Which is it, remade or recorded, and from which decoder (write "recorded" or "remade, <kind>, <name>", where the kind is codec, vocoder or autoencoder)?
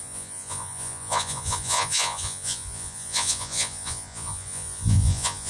remade, vocoder, Vocos